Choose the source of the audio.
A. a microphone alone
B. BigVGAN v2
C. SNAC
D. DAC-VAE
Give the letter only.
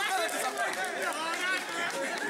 A